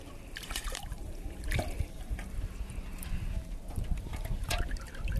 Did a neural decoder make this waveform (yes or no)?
yes